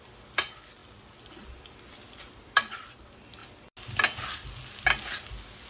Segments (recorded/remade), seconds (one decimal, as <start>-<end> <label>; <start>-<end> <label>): 0.0-5.7 recorded

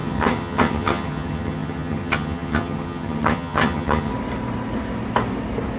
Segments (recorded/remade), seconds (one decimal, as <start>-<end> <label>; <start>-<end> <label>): 0.0-4.1 remade; 4.1-5.8 recorded

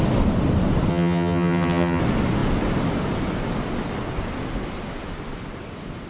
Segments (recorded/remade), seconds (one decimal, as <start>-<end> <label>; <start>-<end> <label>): 0.0-0.9 recorded; 0.9-2.0 remade; 2.0-6.1 recorded